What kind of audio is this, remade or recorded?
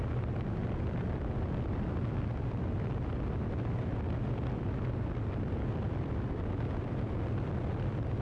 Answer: recorded